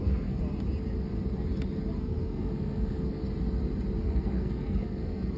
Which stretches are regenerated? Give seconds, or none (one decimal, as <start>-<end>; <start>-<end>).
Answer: 0.0-0.4; 2.0-3.2; 4.0-5.4